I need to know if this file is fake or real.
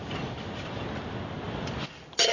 real